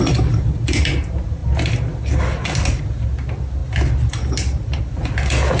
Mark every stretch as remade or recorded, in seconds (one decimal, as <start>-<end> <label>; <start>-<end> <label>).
0.0-5.6 recorded